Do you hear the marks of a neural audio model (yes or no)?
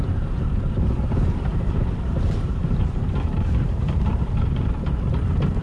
yes